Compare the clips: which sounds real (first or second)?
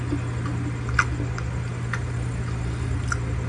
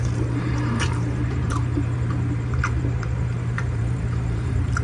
first